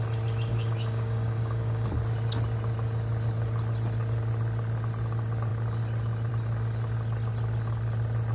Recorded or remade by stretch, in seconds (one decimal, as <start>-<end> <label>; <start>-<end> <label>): 0.0-0.5 recorded; 0.5-1.9 remade; 1.9-8.3 recorded